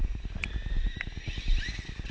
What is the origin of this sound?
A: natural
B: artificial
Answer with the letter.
A